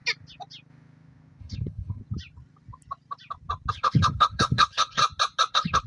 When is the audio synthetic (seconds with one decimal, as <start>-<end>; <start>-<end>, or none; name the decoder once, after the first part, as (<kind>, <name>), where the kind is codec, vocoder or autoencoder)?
1.4-2.0 (codec, HILCodec); 3.7-5.0; 5.5-5.9